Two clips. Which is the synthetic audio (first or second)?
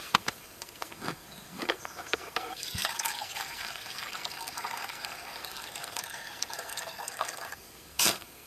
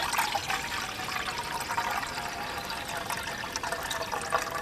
first